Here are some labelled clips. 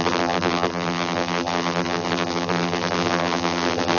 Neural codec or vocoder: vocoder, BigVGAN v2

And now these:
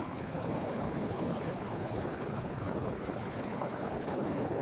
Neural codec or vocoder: codec, HILCodec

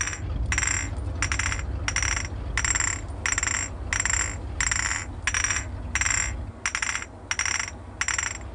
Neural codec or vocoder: none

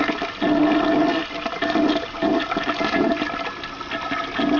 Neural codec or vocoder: none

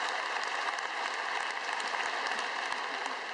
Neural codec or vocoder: none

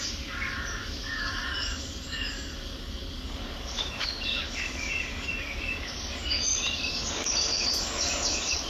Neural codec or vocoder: codec, DAC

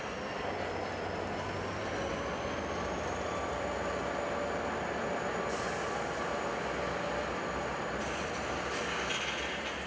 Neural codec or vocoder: none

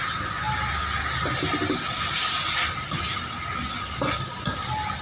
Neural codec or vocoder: none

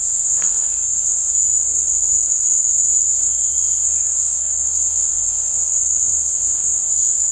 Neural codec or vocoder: codec, SNAC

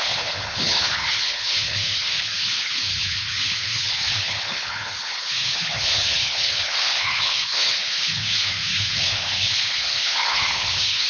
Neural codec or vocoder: codec, HILCodec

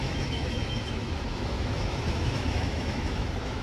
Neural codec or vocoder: autoencoder, DAC-VAE